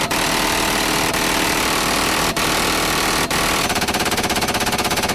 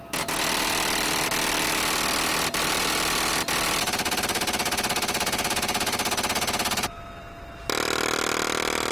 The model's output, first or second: first